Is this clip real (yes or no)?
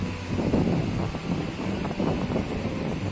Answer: yes